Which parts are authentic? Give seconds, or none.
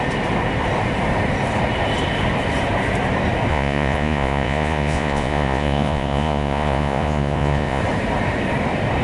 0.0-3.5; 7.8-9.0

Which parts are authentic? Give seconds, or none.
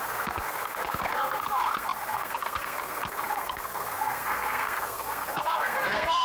none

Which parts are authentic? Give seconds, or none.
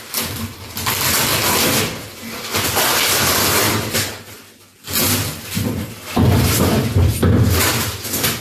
0.0-8.4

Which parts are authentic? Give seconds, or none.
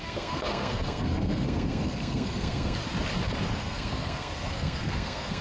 2.8-3.6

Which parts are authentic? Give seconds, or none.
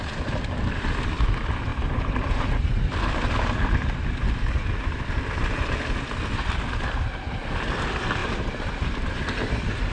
0.0-1.7; 2.6-8.2; 9.2-9.9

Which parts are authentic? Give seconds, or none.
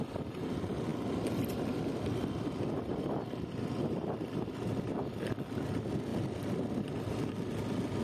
0.0-8.0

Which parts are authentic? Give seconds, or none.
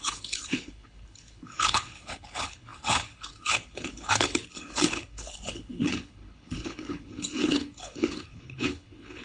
none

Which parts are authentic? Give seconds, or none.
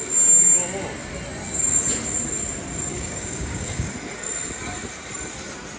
0.0-2.9; 3.9-5.8